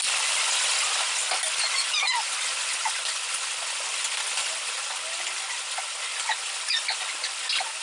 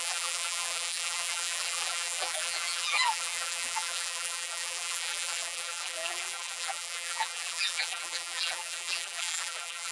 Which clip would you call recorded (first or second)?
first